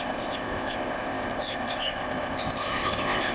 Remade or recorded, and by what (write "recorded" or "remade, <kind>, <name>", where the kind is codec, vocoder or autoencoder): remade, codec, ZipCodec